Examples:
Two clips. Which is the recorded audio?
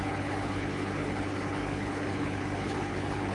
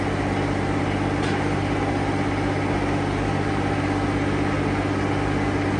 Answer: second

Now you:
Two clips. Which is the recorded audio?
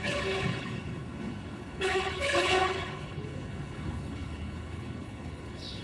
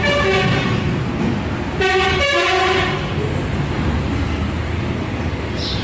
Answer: second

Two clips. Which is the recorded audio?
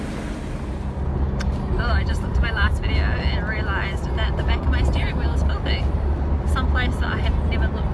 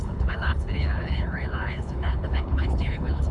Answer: first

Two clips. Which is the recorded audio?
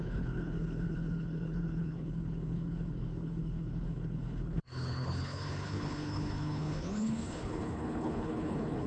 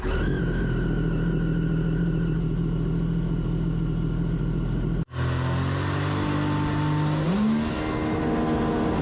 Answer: second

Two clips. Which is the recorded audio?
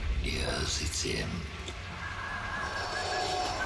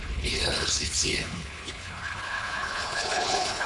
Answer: first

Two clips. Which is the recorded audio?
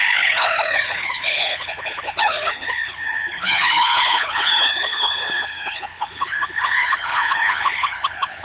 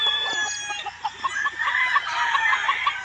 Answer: second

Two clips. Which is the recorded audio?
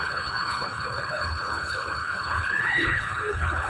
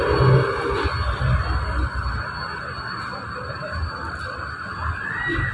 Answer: second